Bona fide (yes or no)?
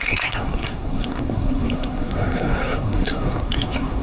no